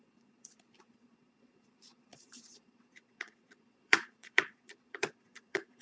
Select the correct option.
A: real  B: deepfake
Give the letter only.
B